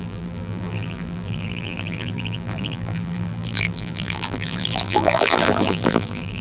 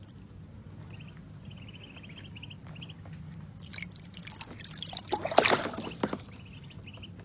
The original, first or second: second